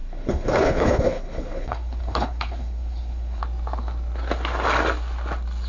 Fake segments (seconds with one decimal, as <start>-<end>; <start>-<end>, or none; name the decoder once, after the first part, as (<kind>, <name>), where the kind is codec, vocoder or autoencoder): 0.0-3.4 (codec, HILCodec)